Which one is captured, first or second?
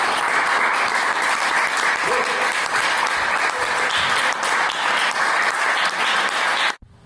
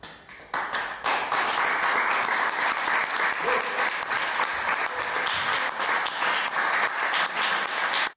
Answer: second